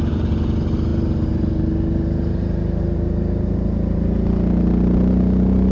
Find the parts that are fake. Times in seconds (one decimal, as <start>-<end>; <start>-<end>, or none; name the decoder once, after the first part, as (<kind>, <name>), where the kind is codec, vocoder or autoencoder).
none